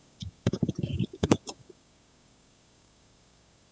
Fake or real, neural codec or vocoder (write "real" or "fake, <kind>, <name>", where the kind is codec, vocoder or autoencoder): fake, codec, DAC